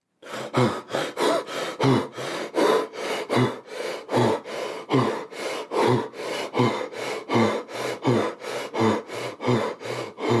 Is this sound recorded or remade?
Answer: recorded